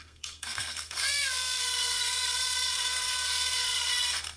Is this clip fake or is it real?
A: fake